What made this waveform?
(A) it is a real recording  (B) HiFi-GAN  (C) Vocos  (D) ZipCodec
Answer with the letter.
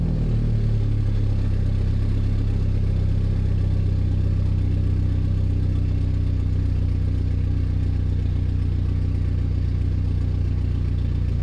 A